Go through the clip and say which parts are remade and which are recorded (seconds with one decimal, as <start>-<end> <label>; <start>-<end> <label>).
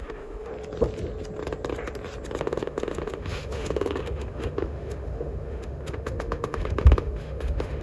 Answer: 0.0-0.5 remade; 0.5-2.4 recorded; 2.4-7.8 remade